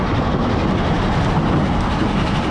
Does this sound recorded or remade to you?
recorded